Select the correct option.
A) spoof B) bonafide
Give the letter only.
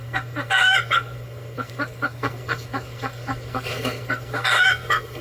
A